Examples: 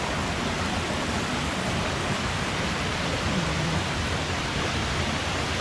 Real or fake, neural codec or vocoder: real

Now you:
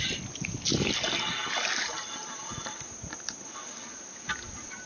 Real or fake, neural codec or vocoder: real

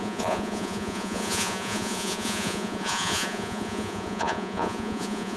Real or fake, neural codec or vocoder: fake, vocoder, Vocos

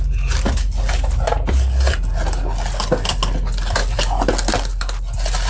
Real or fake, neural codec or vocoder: real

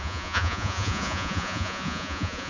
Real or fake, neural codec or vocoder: fake, vocoder, Vocos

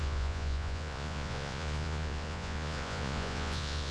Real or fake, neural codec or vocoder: fake, vocoder, Vocos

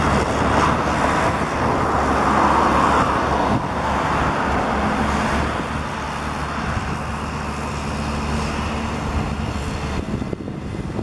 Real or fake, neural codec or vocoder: real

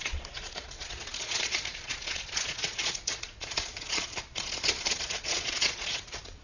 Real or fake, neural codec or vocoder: fake, vocoder, Vocos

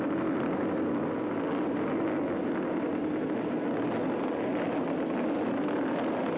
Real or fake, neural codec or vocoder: real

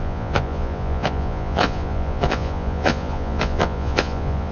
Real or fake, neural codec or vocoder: fake, vocoder, Vocos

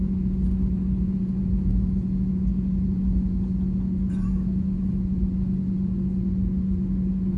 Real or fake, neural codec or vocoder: fake, vocoder, Vocos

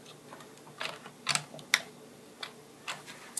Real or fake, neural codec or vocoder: real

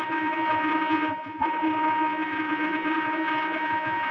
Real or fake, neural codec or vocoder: fake, vocoder, Vocos